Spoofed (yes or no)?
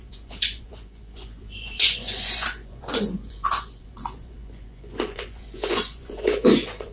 yes